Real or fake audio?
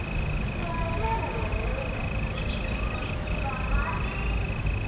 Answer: real